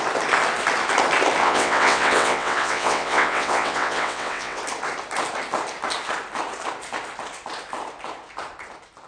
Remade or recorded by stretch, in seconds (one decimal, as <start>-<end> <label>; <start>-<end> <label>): 0.0-1.4 recorded; 1.4-4.6 remade; 4.6-9.1 recorded